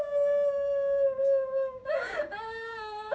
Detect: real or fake fake